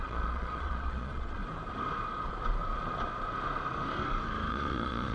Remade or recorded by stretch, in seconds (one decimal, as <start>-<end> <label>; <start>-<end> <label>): 0.0-1.4 remade; 1.4-4.5 recorded; 4.5-5.1 remade